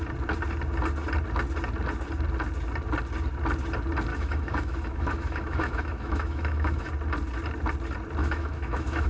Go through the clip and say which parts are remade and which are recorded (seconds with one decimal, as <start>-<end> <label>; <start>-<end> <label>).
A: 0.0-4.1 recorded; 4.1-6.9 remade; 6.9-8.2 recorded; 8.2-9.1 remade